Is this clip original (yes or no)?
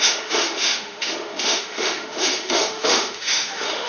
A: no